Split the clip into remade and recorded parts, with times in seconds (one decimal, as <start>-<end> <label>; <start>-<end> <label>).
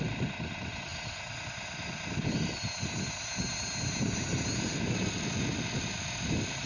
0.0-6.7 recorded